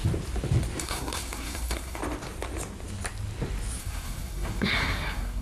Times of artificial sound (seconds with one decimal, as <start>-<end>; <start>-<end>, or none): 0.8-2.0; 3.8-5.4